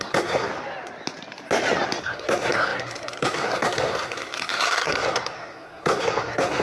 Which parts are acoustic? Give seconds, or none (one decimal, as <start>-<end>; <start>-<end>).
0.5-2.0